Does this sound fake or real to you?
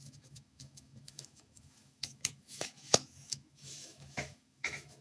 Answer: fake